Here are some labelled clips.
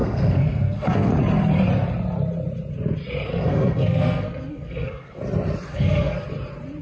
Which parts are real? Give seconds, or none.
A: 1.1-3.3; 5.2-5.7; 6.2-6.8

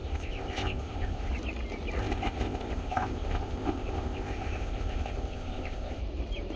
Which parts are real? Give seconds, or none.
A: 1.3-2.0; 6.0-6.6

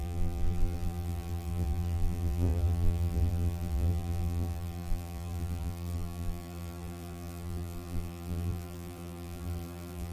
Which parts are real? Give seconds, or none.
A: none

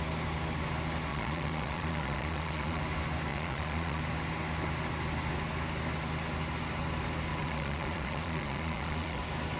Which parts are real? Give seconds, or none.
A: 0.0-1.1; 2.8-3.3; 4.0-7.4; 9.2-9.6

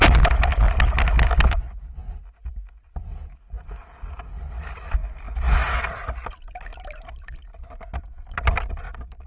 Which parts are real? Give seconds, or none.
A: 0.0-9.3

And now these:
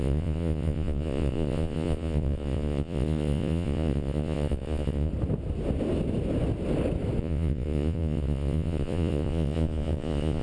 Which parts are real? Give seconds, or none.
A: 5.1-7.2

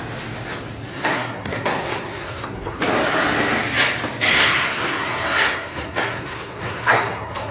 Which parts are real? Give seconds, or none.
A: 0.0-0.9; 2.8-4.3

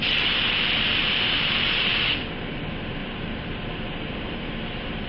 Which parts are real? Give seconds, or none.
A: 0.0-1.0; 1.9-3.0